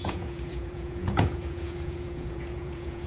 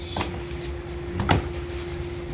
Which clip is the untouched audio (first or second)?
second